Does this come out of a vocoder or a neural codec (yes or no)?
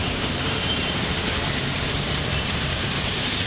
yes